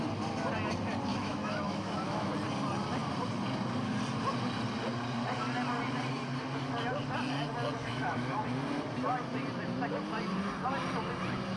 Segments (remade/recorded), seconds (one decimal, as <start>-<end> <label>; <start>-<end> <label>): 0.0-1.1 recorded; 1.1-2.3 remade; 2.3-7.8 recorded; 7.8-8.4 remade; 8.4-11.6 recorded